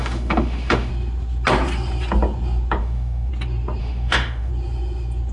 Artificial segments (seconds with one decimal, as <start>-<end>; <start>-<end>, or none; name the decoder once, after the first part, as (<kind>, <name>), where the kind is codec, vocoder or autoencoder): 0.0-0.9 (autoencoder, DAC-VAE); 2.8-3.3; 3.8-4.5